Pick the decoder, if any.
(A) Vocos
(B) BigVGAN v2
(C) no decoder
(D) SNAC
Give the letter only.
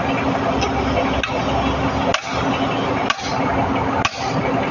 C